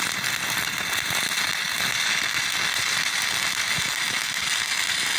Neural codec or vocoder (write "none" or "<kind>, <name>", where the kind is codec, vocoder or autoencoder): none